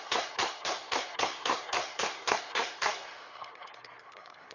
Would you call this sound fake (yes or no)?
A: yes